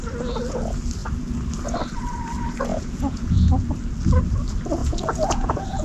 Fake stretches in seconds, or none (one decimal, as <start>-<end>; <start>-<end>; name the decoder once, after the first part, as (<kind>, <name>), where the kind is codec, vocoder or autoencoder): 2.7-3.6 (vocoder, Vocos); 4.8-5.8